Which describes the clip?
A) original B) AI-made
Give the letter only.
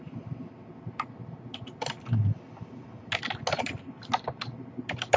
A